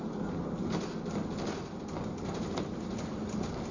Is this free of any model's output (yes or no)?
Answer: yes